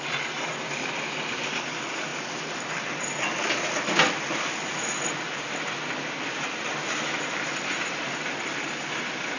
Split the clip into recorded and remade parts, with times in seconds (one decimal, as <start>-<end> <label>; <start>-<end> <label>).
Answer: 0.0-9.4 recorded